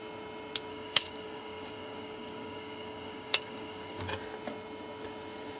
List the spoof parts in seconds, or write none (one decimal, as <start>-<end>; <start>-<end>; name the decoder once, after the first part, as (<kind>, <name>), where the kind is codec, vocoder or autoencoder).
0.7-4.0 (codec, DAC)